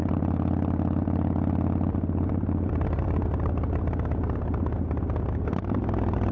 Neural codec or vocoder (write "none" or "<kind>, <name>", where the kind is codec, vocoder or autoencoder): none